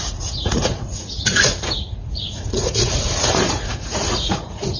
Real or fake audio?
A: fake